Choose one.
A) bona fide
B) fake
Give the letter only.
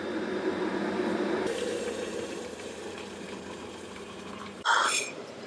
B